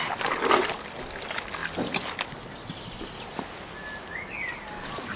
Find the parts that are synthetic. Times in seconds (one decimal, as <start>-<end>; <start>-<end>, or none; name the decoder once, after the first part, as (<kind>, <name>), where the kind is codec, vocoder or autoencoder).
none